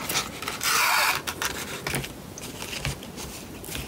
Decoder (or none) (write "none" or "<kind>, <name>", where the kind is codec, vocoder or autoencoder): none